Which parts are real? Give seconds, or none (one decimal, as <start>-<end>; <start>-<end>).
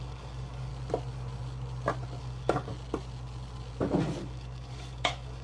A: 0.7-2.2; 2.7-4.2